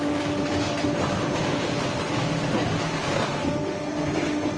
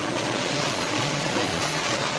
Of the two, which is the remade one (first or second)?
second